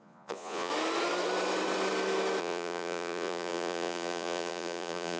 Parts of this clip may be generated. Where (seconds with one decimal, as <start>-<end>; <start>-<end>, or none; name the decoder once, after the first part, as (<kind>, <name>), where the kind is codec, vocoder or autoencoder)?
0.0-0.7 (vocoder, Vocos); 2.4-5.2